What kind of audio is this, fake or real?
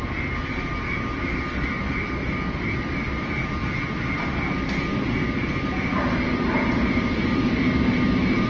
fake